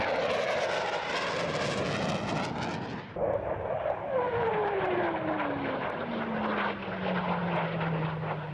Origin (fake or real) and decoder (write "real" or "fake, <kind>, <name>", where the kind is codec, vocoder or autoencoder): real